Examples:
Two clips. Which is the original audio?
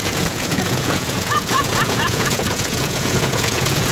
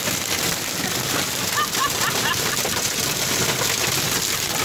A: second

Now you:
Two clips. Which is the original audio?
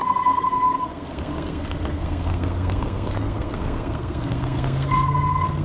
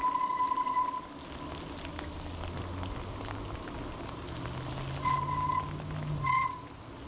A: second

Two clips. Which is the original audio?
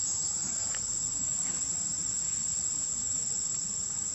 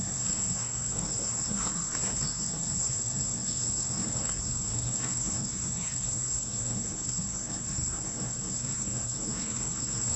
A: first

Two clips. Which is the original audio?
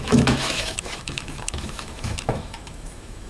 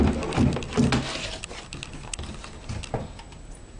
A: second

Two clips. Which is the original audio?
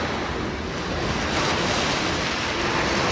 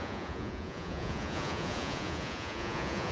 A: first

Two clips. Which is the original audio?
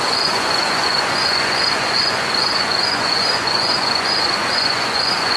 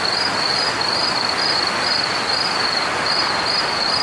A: second